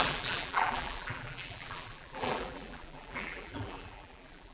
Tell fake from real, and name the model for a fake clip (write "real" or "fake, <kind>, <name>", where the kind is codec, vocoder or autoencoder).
fake, vocoder, BigVGAN v2